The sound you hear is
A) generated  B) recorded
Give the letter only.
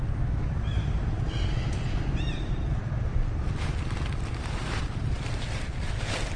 B